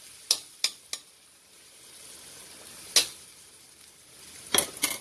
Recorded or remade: recorded